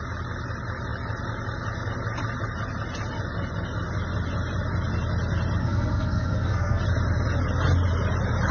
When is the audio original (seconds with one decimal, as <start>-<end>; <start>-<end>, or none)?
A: 0.0-5.6; 6.8-8.5